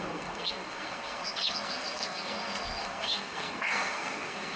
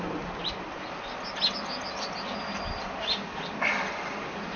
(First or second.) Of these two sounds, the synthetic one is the first